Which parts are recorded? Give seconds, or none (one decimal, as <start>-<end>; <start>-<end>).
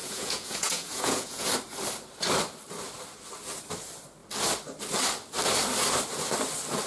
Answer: 1.5-6.9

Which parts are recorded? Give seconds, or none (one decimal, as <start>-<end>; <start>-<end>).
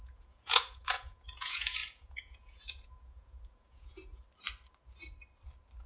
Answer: 4.2-5.9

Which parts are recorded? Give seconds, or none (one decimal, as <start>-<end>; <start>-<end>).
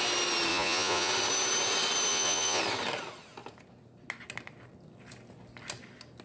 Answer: 0.0-0.5; 1.1-2.1; 2.6-6.2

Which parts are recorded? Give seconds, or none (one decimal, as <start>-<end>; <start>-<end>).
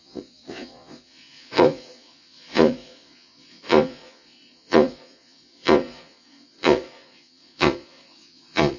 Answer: none